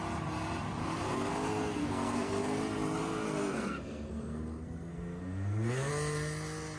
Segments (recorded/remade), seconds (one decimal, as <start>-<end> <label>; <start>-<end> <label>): 0.0-0.8 recorded; 0.8-2.6 remade; 2.6-3.0 recorded; 3.0-5.9 remade; 5.9-6.8 recorded